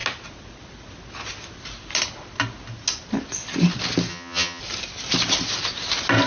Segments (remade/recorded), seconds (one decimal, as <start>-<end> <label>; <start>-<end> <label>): 0.0-4.1 recorded; 4.1-4.6 remade; 4.6-6.3 recorded